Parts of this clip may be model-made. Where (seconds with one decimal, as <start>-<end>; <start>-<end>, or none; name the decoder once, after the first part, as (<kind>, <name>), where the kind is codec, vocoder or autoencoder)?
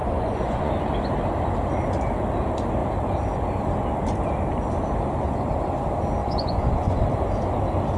0.0-0.7 (vocoder, Vocos); 6.2-7.0